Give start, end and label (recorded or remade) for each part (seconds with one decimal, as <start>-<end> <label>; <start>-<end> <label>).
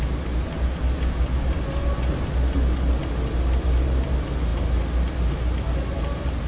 0.0-6.5 recorded